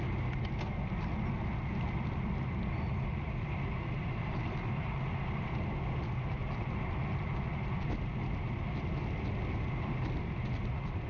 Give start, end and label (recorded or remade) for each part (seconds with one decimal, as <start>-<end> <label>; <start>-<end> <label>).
0.0-11.1 recorded